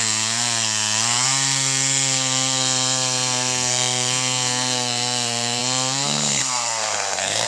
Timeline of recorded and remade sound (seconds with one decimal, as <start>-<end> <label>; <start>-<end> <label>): 0.0-7.5 remade